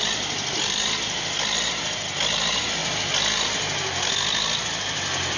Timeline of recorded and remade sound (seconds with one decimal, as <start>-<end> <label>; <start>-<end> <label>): 0.0-5.4 recorded